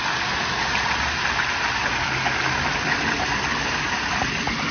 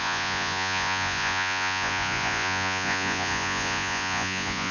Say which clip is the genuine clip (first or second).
first